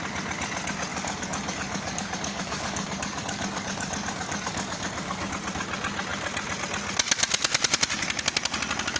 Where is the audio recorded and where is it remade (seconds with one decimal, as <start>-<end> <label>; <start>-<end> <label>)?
0.0-0.9 recorded; 0.9-5.3 remade; 5.3-9.0 recorded